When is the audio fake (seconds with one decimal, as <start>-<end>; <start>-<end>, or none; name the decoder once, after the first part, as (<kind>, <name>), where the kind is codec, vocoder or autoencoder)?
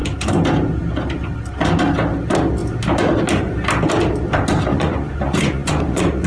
4.7-6.3 (vocoder, Vocos)